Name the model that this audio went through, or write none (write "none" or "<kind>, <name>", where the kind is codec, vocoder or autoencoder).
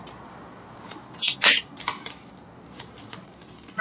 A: none